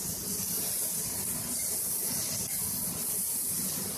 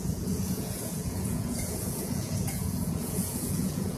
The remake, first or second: second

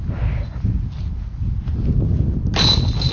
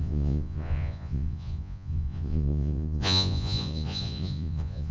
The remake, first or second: second